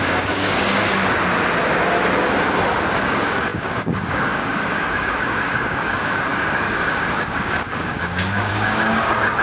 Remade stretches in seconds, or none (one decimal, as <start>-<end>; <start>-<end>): 0.0-0.8; 3.0-9.4